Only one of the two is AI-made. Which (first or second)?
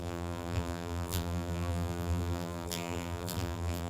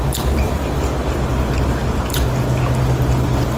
first